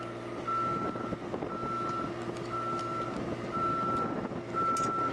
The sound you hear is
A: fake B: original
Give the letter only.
B